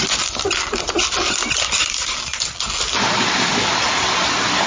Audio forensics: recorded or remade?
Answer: recorded